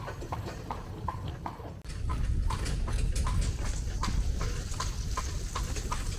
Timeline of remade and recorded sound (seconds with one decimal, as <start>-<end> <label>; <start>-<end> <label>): 0.0-6.2 recorded